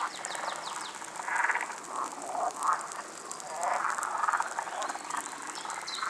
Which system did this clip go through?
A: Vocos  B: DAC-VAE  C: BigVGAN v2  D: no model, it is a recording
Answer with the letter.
D